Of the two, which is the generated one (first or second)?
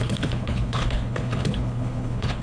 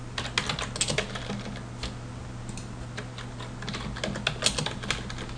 first